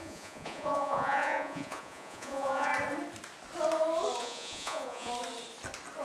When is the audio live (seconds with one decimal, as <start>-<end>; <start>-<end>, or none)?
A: 2.7-4.2; 5.1-6.0